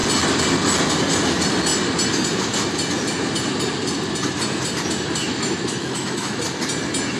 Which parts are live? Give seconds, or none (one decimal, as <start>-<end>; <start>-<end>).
0.0-5.2; 6.4-7.2